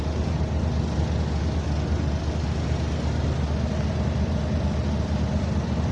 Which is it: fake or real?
real